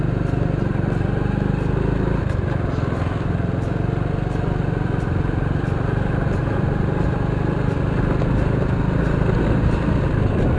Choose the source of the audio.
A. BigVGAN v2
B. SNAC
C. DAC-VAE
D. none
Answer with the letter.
D